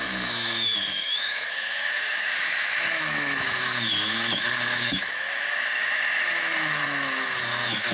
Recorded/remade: remade